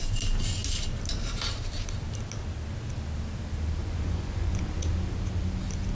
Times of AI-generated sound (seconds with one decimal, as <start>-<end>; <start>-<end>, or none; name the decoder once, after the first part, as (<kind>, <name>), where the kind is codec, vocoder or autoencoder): 3.8-4.7 (vocoder, Vocos)